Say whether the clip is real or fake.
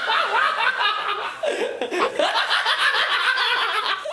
real